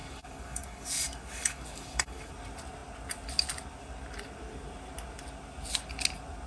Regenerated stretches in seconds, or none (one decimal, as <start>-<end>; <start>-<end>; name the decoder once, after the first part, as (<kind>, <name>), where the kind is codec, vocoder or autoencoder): 0.0-2.3 (codec, DAC)